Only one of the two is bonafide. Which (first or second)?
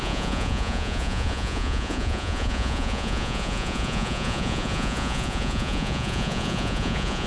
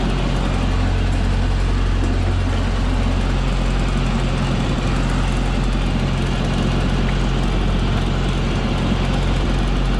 second